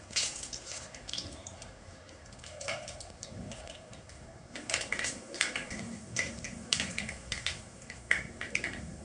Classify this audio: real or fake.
fake